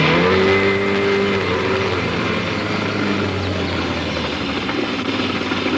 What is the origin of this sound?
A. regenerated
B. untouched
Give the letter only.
B